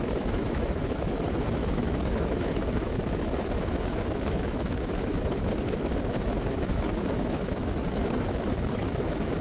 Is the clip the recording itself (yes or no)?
no